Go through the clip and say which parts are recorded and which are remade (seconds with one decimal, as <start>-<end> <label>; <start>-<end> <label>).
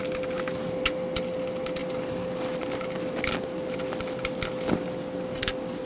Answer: 0.0-1.8 recorded; 1.8-2.6 remade; 2.6-5.9 recorded